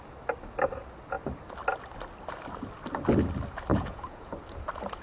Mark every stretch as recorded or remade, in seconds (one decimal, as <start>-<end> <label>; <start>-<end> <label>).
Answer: 0.0-3.7 recorded; 3.7-4.3 remade; 4.3-5.0 recorded